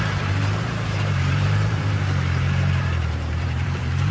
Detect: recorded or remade remade